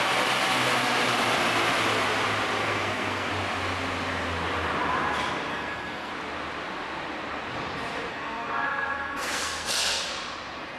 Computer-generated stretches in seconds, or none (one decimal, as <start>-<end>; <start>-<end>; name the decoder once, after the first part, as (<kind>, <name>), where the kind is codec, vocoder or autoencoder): 2.6-3.3 (codec, SNAC); 5.5-6.1; 8.1-10.1